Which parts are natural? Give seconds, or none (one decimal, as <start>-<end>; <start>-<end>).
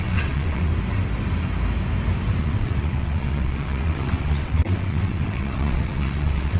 0.7-2.4